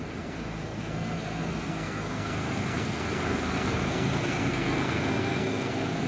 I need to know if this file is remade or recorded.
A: remade